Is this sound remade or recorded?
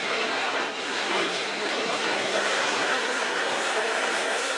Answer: remade